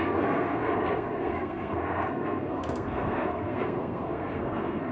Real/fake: fake